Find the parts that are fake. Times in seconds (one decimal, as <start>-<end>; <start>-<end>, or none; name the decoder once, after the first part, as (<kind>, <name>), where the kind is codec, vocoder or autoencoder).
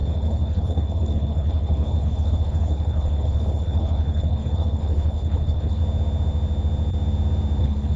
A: 0.0-5.8 (codec, HILCodec); 7.6-8.0